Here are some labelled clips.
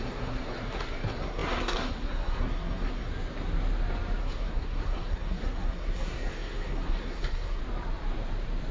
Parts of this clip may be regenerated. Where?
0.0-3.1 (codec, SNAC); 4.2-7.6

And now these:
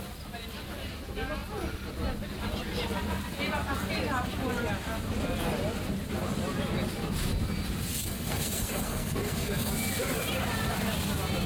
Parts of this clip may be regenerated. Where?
7.9-9.7 (codec, SNAC)

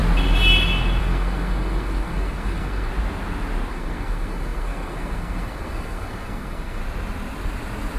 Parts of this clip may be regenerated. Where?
1.0-2.9 (codec, SNAC); 3.7-6.8

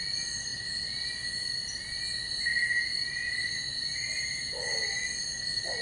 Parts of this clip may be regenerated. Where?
none